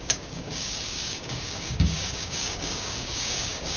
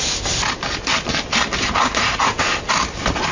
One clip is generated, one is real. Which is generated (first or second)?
first